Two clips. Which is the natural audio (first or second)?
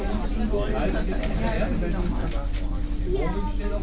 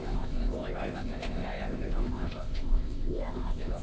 first